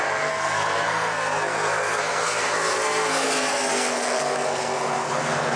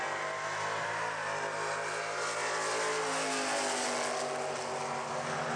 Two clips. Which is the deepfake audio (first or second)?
first